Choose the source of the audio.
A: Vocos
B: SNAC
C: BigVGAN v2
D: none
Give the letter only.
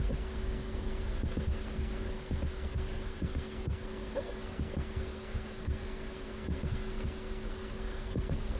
B